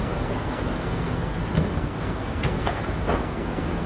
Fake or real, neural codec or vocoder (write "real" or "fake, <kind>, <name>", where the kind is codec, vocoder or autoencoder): fake, codec, SNAC